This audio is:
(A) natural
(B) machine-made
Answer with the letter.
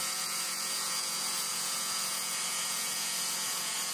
B